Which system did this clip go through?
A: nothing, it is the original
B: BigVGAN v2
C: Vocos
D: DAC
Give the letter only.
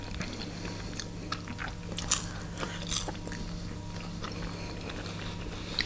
A